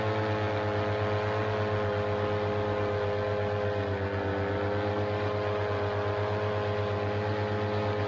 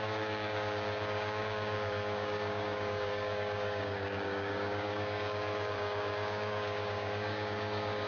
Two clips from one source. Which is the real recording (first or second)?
first